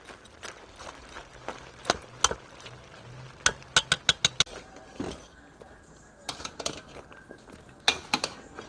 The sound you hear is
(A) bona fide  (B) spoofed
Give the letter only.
A